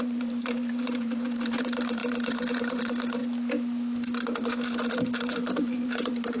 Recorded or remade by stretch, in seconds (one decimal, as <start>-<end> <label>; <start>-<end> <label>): 0.0-3.2 remade; 3.2-4.4 recorded; 4.4-6.4 remade